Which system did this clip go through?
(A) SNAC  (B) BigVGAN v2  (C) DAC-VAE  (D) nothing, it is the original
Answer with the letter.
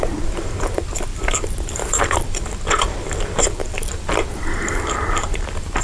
B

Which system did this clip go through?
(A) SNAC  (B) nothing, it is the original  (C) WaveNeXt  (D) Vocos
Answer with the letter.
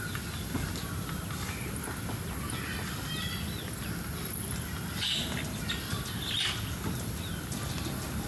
B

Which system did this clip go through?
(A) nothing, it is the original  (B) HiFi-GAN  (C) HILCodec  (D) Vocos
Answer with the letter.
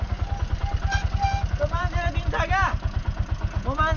A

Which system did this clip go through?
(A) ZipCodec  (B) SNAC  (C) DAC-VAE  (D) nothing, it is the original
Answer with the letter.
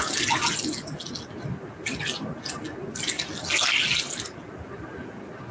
D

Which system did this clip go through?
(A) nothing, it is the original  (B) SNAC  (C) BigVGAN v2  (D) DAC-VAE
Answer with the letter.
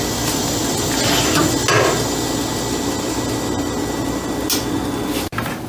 A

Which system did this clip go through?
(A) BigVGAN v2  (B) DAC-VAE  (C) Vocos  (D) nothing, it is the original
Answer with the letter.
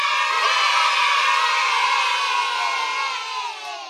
D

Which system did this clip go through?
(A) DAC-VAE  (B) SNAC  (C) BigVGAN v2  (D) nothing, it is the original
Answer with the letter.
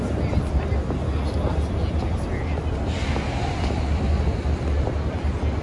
D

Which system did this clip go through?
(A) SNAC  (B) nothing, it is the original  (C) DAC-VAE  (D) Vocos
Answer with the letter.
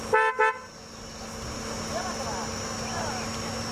B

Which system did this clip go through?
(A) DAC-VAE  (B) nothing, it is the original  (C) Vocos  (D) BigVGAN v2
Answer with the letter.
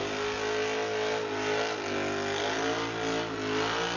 B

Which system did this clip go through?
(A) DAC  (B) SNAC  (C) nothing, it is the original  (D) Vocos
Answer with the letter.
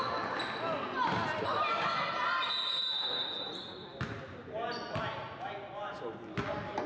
C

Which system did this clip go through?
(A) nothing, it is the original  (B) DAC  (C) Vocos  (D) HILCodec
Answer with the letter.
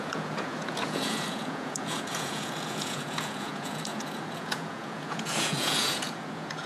C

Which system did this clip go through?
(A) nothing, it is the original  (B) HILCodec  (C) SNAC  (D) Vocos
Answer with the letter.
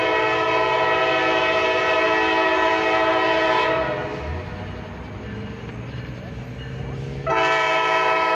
A